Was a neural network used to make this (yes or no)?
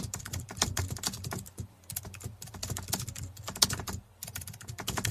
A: no